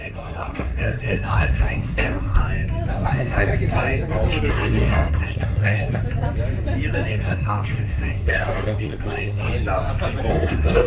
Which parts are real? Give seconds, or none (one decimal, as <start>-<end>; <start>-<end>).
2.4-2.9; 3.5-4.5; 6.0-7.1; 9.5-10.3